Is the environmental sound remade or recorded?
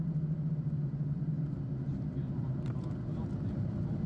remade